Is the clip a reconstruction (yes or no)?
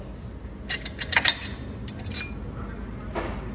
no